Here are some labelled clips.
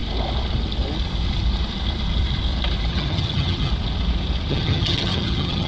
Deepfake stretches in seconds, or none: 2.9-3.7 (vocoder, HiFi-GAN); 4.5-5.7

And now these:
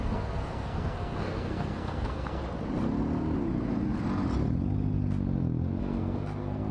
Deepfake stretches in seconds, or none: 0.0-2.4 (codec, SNAC); 5.8-6.7

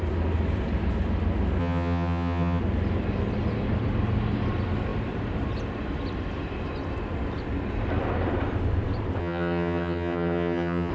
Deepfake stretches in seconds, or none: 1.6-2.6 (vocoder, HiFi-GAN); 9.2-10.9

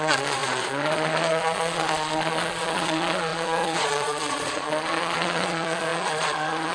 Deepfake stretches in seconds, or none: 0.0-6.7 (vocoder, Vocos)

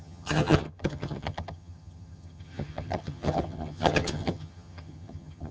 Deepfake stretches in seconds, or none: 0.0-5.5 (vocoder, HiFi-GAN)

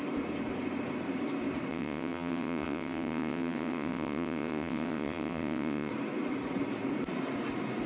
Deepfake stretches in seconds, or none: 1.7-5.9 (vocoder, WaveNeXt)

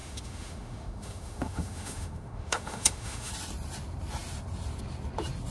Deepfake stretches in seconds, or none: 0.0-3.3 (autoencoder, DAC-VAE)

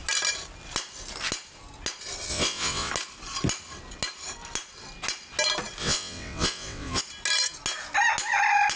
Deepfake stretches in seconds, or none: 2.3-2.9 (vocoder, WaveNeXt); 5.8-7.0